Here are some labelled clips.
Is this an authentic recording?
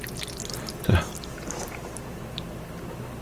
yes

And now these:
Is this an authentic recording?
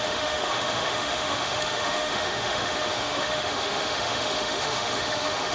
no